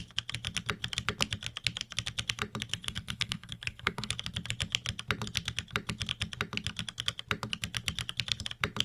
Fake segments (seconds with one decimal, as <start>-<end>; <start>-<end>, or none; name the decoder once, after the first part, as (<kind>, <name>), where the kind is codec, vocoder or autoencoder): 2.7-4.1 (codec, SNAC)